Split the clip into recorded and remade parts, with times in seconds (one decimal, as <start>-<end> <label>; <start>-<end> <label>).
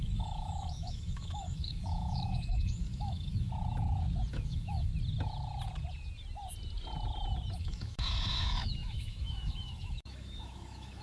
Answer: 0.0-3.5 remade; 3.5-4.3 recorded; 4.3-4.9 remade; 4.9-7.6 recorded; 7.6-11.0 remade